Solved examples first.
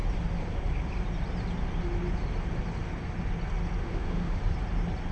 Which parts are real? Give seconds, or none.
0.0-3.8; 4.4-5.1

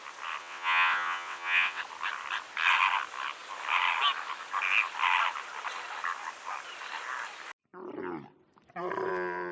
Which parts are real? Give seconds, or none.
0.0-0.4; 1.8-9.5

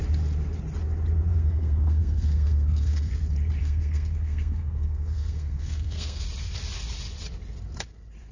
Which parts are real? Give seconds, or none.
0.0-1.3; 3.1-3.6; 6.2-8.3

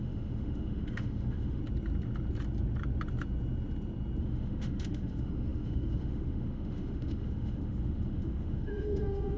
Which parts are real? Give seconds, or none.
1.6-4.2

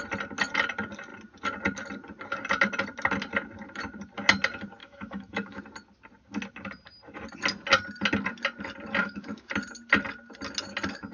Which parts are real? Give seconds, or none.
0.0-4.8; 5.6-9.0; 9.5-11.1

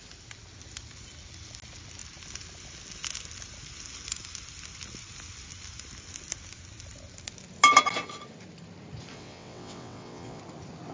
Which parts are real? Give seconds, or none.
0.0-9.1; 10.4-10.9

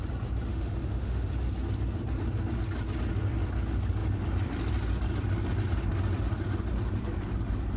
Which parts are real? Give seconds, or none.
0.0-0.5; 1.3-7.8